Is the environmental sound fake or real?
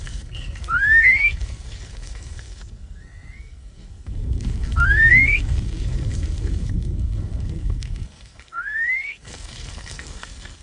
fake